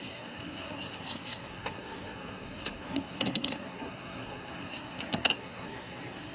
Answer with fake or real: fake